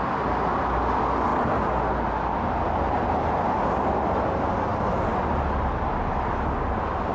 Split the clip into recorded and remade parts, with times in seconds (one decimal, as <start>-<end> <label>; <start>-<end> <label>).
0.0-7.1 recorded